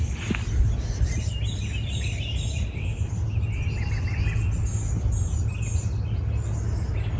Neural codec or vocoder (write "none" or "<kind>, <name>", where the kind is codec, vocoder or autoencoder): none